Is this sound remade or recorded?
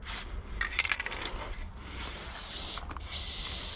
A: recorded